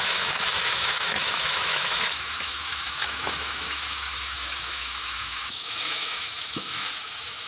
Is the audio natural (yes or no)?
no